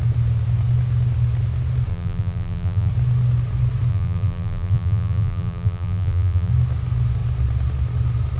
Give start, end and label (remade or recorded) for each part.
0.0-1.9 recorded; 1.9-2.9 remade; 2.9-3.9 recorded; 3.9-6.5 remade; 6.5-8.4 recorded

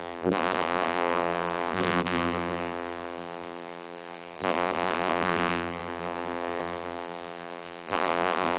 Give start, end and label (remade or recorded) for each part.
0.0-8.6 remade

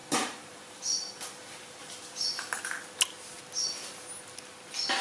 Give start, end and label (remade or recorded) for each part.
0.0-2.6 remade; 2.6-5.0 recorded

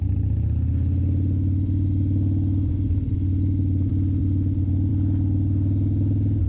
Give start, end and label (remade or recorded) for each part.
0.0-6.5 recorded

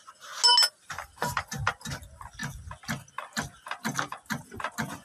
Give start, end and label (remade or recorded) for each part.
0.0-5.0 recorded

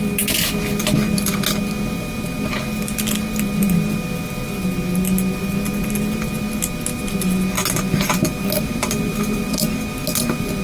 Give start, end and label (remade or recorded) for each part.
0.0-8.7 recorded; 8.7-9.5 remade; 9.5-10.6 recorded

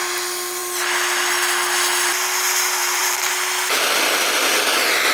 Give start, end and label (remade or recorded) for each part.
0.0-2.8 recorded; 2.8-3.3 remade; 3.3-5.1 recorded